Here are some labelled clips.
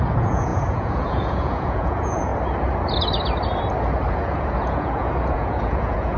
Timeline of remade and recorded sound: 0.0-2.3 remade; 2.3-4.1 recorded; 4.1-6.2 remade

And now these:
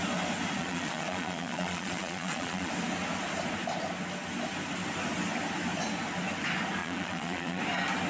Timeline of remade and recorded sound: 0.0-0.6 recorded; 0.6-2.7 remade; 2.7-6.8 recorded; 6.8-7.6 remade; 7.6-8.1 recorded

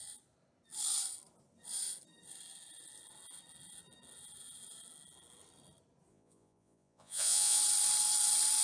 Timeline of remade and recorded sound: 0.0-6.1 recorded; 6.1-7.6 remade; 7.6-8.6 recorded

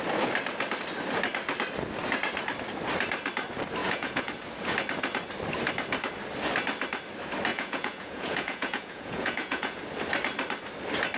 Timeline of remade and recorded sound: 0.0-3.8 recorded; 3.8-4.3 remade; 4.3-7.5 recorded; 7.5-9.8 remade; 9.8-11.2 recorded

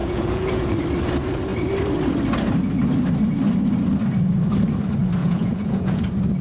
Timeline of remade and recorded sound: 0.0-0.7 remade; 0.7-5.2 recorded; 5.2-6.0 remade; 6.0-6.4 recorded

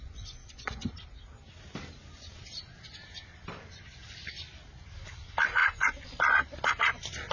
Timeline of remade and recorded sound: 0.0-0.9 remade; 0.9-5.6 recorded; 5.6-6.2 remade; 6.2-7.3 recorded

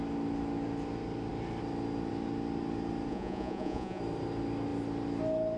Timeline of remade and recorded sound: 0.0-3.1 recorded; 3.1-4.0 remade; 4.0-5.6 recorded